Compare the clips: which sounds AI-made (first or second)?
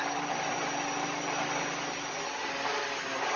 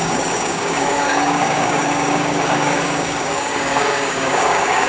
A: second